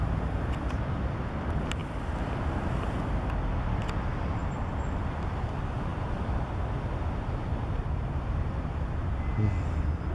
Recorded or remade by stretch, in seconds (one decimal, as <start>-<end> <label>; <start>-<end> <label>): 0.0-7.5 recorded; 7.5-9.1 remade; 9.1-10.1 recorded